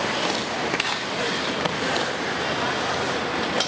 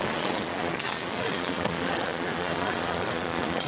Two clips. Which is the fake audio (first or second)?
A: second